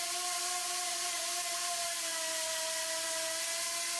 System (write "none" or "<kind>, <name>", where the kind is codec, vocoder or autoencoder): none